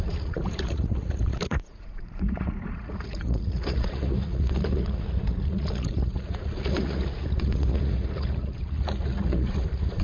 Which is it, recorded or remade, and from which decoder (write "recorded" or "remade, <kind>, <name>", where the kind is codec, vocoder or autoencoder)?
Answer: remade, vocoder, Vocos